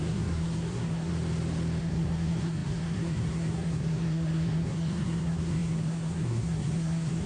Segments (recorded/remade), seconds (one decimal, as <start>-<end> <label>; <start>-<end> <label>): 0.0-1.1 remade; 1.1-1.8 recorded; 1.8-7.3 remade